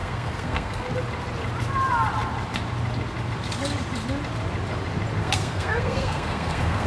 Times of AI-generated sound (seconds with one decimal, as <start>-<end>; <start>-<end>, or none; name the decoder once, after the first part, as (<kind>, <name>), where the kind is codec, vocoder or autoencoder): 0.0-0.9 (codec, SNAC); 5.2-6.9